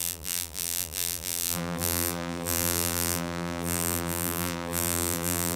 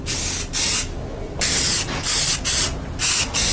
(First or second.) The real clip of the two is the second